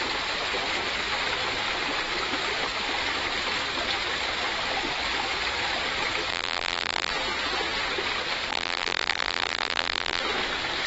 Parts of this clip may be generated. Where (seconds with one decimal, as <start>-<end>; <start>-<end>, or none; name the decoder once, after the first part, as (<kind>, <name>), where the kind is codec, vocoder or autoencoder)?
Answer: 6.3-7.1 (vocoder, BigVGAN v2); 8.5-10.2